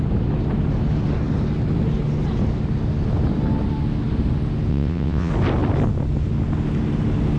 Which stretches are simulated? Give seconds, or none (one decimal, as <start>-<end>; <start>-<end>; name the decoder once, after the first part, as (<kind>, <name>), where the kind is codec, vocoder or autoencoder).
4.7-5.3 (vocoder, WaveNeXt)